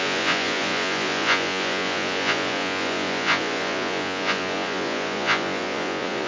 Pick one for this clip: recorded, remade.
remade